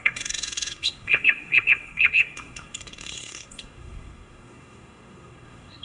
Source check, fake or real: fake